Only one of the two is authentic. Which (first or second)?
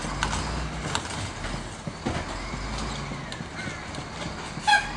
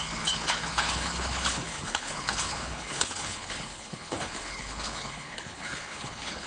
first